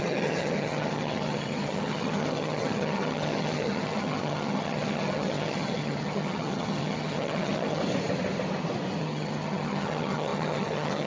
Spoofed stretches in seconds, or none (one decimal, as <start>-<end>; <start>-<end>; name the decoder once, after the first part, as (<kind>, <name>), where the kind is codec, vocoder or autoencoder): 0.0-7.8 (vocoder, HiFi-GAN); 9.0-11.1